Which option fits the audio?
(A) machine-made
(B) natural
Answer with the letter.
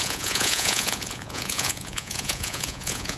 A